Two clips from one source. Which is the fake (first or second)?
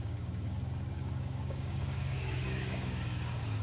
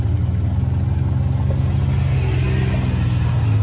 first